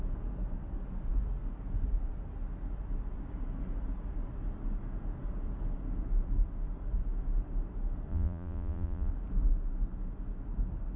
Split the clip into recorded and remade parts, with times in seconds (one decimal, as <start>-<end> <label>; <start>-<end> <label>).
0.0-8.1 recorded; 8.1-9.1 remade; 9.1-11.0 recorded